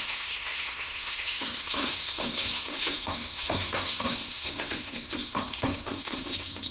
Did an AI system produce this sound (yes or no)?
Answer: yes